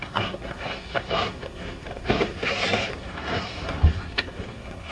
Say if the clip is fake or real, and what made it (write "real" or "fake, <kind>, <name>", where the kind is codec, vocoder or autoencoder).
fake, codec, SNAC